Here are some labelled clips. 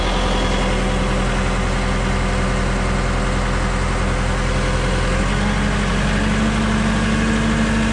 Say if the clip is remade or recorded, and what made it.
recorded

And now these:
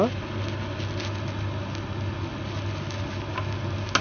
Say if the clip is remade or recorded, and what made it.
recorded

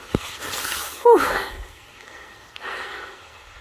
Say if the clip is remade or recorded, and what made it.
remade, codec, SNAC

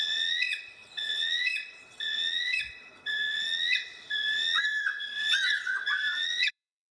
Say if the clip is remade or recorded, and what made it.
remade, vocoder, WaveNeXt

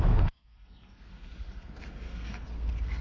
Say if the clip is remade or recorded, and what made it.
remade, codec, SNAC